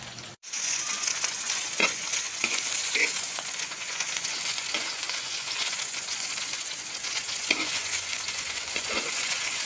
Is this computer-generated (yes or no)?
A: yes